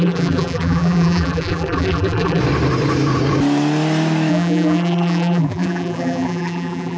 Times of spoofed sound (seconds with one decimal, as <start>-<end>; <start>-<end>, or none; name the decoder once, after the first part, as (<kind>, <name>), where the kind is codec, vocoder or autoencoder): 0.0-2.4 (vocoder, BigVGAN v2); 4.3-7.0